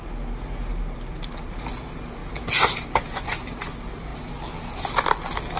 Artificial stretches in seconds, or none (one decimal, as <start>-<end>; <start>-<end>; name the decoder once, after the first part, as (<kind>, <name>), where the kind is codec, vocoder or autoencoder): none